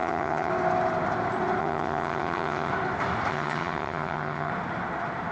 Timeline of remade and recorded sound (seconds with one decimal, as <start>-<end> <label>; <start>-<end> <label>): 0.0-0.5 remade; 0.5-1.6 recorded; 1.6-2.7 remade; 2.7-3.3 recorded; 3.3-4.5 remade; 4.5-5.3 recorded